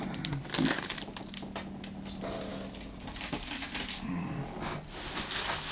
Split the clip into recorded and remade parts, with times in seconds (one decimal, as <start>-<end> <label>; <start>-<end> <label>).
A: 0.0-5.7 recorded